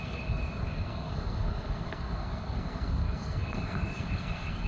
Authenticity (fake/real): fake